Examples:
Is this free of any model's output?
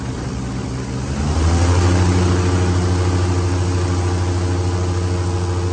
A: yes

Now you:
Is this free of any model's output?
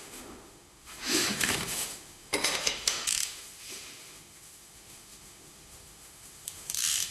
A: no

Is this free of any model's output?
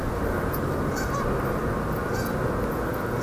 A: yes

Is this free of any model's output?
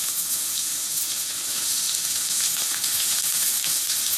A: no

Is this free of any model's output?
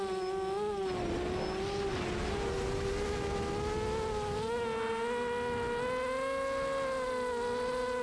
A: yes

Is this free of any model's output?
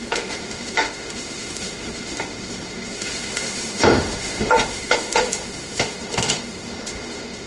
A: no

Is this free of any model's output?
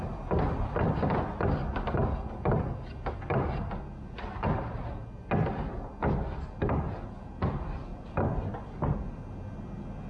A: yes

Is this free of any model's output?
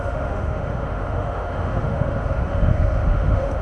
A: no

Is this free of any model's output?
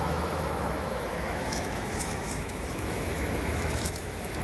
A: no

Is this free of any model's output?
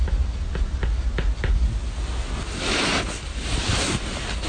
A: yes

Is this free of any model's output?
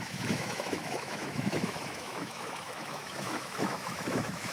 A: no